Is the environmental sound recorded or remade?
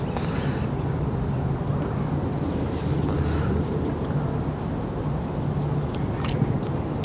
recorded